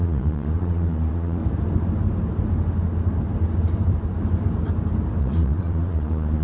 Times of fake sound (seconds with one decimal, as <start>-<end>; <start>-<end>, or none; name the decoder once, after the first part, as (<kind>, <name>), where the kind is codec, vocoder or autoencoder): 0.0-1.4 (vocoder, Vocos); 5.2-6.4